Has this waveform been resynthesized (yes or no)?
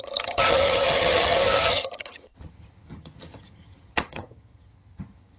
yes